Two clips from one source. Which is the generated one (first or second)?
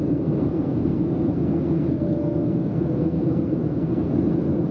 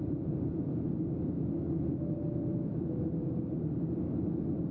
first